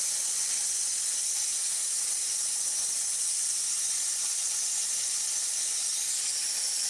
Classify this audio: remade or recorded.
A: remade